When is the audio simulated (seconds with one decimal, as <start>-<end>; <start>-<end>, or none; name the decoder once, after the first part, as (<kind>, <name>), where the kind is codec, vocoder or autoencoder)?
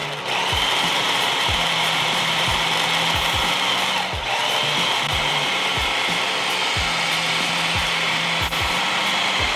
0.9-2.5 (vocoder, BigVGAN v2); 5.3-5.8; 7.1-9.6